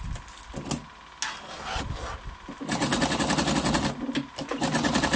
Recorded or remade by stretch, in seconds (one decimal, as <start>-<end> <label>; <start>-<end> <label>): 0.0-5.2 recorded